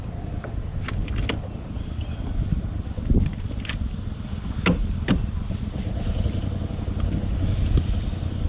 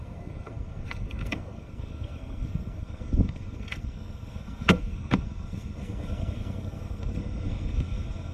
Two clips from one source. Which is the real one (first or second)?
first